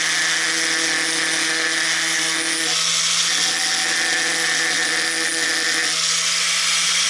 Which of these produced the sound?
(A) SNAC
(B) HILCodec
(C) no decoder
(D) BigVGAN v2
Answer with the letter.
C